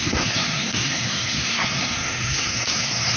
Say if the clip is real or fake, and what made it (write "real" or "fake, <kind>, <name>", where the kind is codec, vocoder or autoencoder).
fake, codec, SNAC